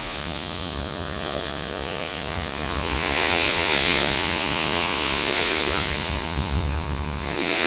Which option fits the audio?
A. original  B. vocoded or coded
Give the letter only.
B